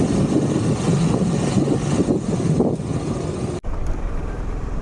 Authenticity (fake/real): real